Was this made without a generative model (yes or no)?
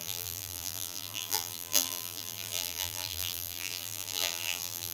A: no